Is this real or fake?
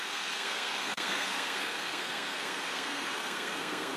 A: fake